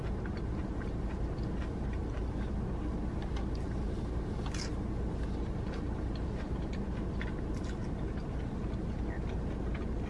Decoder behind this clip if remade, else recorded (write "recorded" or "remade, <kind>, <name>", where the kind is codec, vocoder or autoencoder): recorded